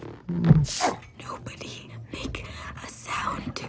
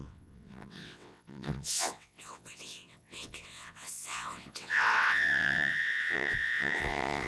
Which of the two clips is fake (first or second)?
second